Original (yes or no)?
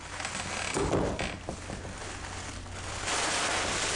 yes